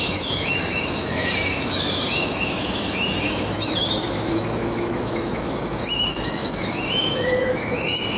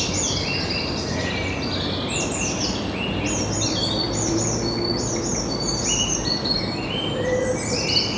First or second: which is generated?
first